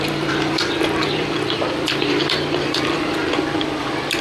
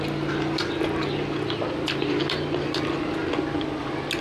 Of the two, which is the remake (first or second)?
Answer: first